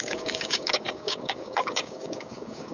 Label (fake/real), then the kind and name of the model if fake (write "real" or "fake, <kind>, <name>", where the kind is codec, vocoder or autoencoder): fake, codec, DAC